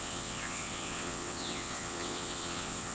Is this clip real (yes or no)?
no